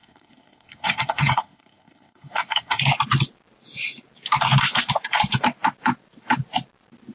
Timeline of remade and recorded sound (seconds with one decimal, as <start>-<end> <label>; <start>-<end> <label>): 0.0-2.8 remade; 2.8-7.1 recorded